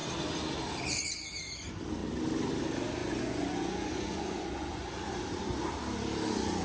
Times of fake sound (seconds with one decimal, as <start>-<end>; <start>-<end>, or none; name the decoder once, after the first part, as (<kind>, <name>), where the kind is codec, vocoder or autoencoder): 3.0-4.9 (vocoder, Vocos)